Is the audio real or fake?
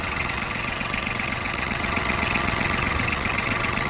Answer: fake